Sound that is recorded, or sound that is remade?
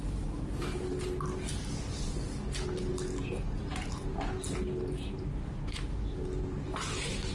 recorded